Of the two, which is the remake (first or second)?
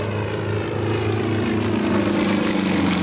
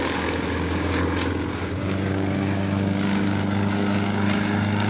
second